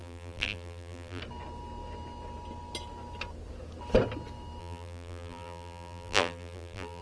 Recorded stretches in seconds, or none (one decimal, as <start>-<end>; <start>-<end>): 1.2-4.6